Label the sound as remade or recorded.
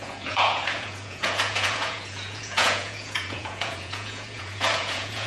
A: remade